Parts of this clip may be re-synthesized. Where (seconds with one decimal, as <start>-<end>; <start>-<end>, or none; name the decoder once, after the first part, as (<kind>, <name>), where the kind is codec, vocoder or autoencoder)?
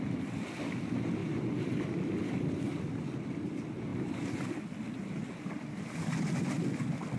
none